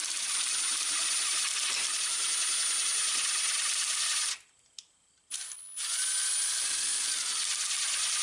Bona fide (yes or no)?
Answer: yes